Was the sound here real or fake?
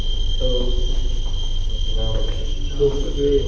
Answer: real